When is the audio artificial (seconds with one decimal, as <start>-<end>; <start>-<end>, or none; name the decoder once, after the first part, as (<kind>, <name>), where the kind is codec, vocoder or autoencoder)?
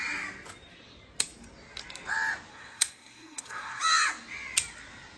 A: 2.5-3.8 (codec, SNAC)